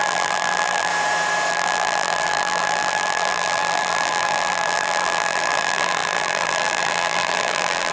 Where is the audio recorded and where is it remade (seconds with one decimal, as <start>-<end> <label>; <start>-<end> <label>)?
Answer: 0.0-0.9 remade; 0.9-1.5 recorded; 1.5-7.9 remade